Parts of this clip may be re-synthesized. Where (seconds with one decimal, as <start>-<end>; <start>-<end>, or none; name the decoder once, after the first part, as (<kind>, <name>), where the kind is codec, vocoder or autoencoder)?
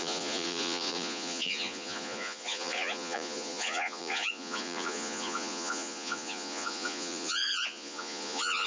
0.0-8.7 (vocoder, Vocos)